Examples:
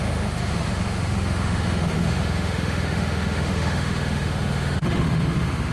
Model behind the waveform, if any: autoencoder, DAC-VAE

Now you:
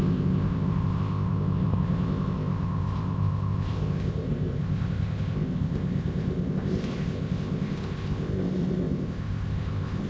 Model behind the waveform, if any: codec, ZipCodec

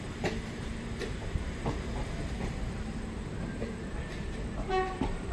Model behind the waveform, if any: vocoder, BigVGAN v2